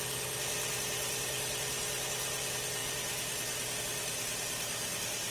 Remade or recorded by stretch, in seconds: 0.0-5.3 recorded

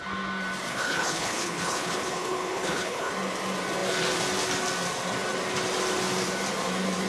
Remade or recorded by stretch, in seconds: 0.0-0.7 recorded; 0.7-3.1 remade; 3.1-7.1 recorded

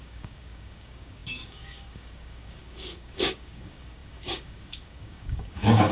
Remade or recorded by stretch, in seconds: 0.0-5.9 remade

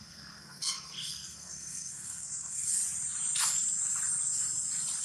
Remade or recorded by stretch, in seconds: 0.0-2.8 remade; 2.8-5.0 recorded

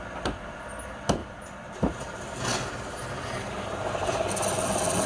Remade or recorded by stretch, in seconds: 0.0-1.2 recorded; 1.2-4.3 remade; 4.3-5.1 recorded